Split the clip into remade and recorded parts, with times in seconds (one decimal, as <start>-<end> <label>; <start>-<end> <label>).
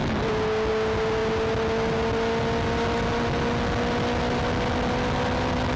0.0-5.8 recorded